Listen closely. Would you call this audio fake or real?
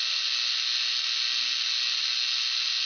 real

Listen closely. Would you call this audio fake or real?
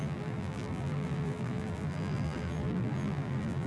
fake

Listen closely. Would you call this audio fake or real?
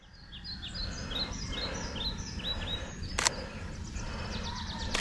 real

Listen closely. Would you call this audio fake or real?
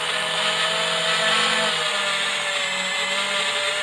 real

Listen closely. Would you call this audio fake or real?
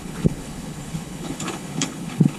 fake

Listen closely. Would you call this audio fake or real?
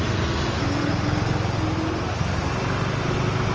real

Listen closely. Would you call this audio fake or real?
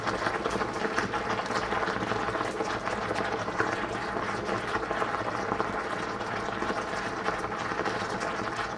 real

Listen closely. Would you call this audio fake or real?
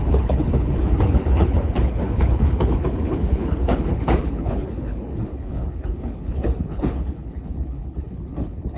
fake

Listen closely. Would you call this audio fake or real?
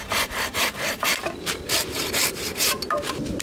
fake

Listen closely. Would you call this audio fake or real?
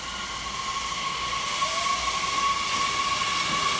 real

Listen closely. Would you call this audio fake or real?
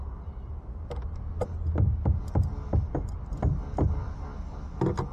real